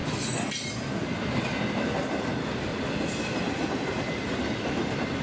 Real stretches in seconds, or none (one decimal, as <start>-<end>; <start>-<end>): 1.4-2.7